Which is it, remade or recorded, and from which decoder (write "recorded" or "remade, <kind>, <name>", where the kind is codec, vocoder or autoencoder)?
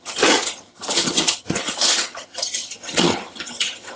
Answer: remade, vocoder, HiFi-GAN